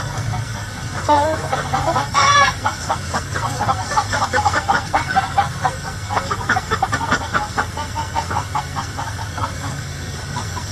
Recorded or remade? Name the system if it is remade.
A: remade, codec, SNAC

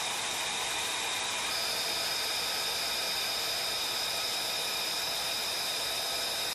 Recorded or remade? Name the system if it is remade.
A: recorded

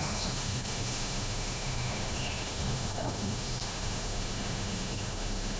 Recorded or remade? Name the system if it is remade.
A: remade, autoencoder, DAC-VAE